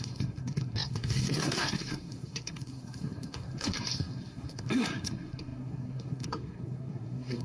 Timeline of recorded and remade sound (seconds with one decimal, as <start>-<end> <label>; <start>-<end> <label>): 0.0-7.4 remade